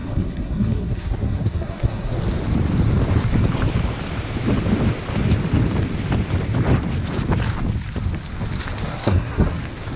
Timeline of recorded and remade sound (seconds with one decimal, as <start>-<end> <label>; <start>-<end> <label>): 0.0-2.1 remade; 2.1-8.9 recorded; 8.9-9.6 remade; 9.6-10.0 recorded